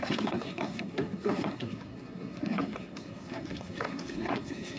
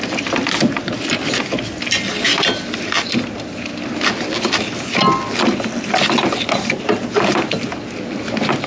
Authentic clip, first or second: second